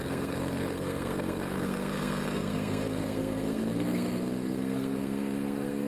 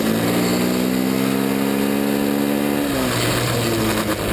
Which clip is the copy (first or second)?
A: first